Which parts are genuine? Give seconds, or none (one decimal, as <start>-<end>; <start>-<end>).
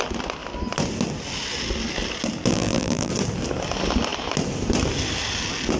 0.0-2.5; 3.1-5.8